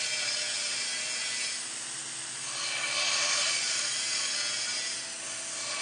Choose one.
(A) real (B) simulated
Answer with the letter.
A